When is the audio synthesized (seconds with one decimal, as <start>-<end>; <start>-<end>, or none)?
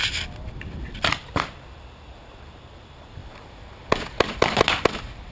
none